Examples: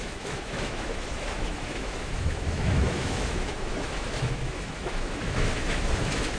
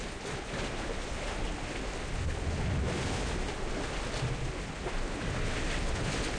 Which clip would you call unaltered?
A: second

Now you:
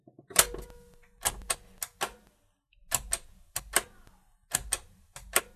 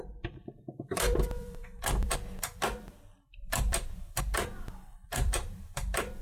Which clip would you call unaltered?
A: first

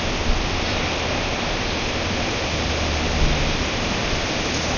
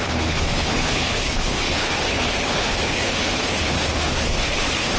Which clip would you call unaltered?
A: first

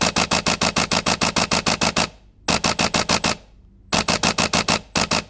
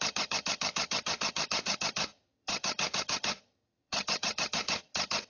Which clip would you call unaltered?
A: first